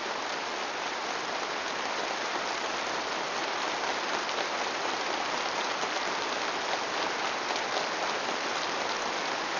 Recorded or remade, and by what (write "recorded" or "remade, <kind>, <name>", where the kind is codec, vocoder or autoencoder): recorded